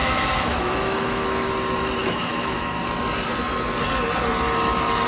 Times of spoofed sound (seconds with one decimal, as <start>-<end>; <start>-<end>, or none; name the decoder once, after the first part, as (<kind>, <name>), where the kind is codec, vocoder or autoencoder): 0.0-1.5 (autoencoder, DAC-VAE); 2.0-2.8